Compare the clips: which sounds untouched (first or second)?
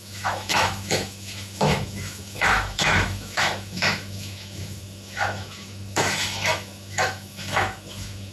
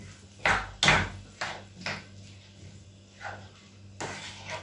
second